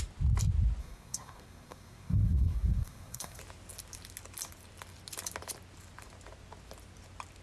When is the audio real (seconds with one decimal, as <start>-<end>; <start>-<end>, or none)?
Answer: 0.0-0.8; 3.4-7.4